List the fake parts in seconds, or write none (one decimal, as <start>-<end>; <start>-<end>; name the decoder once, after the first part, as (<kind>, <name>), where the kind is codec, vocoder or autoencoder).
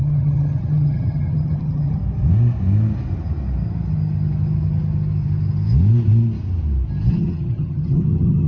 0.0-2.0 (vocoder, HiFi-GAN); 7.1-8.5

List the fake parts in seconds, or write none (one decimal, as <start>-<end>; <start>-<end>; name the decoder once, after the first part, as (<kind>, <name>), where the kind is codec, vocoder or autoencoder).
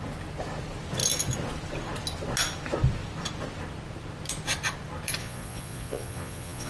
5.2-6.7 (vocoder, Vocos)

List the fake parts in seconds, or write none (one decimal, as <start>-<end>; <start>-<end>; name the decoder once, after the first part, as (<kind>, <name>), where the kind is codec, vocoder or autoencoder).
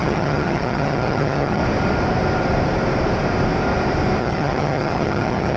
0.0-1.6 (vocoder, HiFi-GAN); 4.2-5.6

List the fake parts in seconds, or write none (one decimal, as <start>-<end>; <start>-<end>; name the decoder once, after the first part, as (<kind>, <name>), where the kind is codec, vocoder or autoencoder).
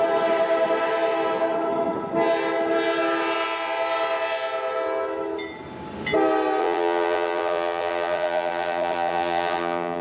6.6-10.0 (vocoder, BigVGAN v2)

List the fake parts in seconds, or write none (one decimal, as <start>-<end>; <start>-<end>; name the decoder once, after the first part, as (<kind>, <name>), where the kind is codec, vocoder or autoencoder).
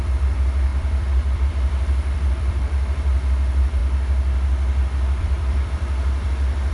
0.0-3.8 (vocoder, BigVGAN v2); 5.2-6.7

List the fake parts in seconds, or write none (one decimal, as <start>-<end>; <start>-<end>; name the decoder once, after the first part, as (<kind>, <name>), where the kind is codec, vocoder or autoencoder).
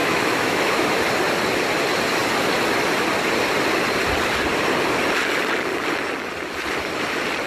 0.0-0.9 (autoencoder, DAC-VAE)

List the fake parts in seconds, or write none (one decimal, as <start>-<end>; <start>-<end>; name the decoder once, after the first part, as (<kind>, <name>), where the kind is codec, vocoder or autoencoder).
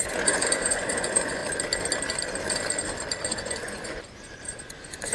0.0-1.4 (vocoder, Vocos); 3.3-5.1